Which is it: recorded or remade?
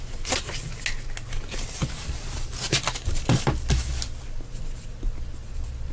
recorded